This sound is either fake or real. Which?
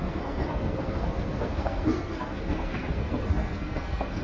fake